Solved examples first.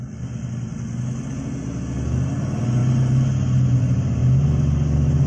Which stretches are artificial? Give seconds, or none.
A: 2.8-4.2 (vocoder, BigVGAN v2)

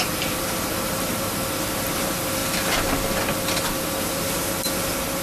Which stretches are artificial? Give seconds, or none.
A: 0.0-2.4 (vocoder, BigVGAN v2); 3.8-5.2

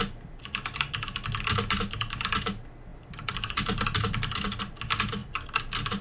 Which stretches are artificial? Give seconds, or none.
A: 2.9-3.8 (vocoder, BigVGAN v2)

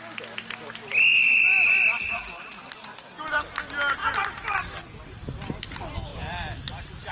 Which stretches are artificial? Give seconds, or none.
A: 1.1-2.6 (vocoder, BigVGAN v2); 4.0-5.6; 6.1-7.1

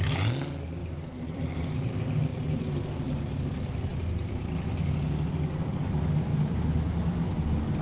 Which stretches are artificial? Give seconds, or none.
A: 0.8-1.9 (vocoder, BigVGAN v2); 2.3-3.2

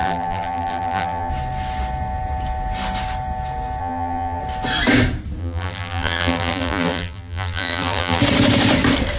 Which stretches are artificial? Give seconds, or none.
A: 0.0-1.3 (vocoder, BigVGAN v2); 3.8-4.4; 5.4-8.2

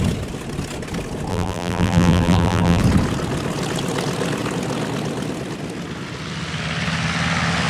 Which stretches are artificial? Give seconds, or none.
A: 1.3-2.8 (vocoder, BigVGAN v2)

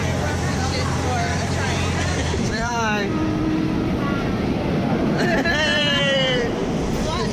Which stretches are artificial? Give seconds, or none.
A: 0.0-7.3 (vocoder, BigVGAN v2)